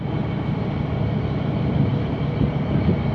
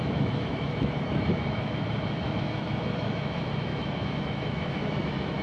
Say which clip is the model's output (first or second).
second